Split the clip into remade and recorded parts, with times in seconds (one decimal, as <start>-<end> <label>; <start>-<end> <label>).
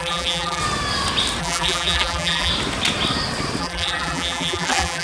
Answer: 0.0-0.6 remade; 0.6-1.4 recorded; 1.4-2.5 remade; 2.5-3.6 recorded; 3.6-5.0 remade